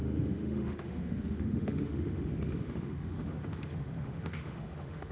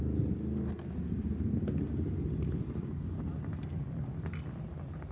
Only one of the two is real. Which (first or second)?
second